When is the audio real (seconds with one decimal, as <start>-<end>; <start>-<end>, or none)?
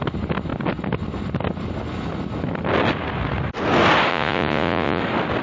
0.0-4.1; 5.0-5.4